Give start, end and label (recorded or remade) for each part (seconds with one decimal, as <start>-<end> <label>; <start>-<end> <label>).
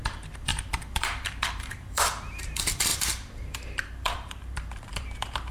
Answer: 0.0-5.5 remade